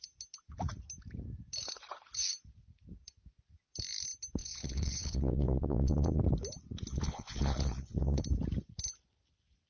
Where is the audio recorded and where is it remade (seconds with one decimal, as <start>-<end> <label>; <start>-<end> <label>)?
0.0-4.4 recorded; 4.4-6.2 remade; 6.2-6.9 recorded; 6.9-8.2 remade; 8.2-9.7 recorded